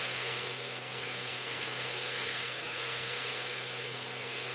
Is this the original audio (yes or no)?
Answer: no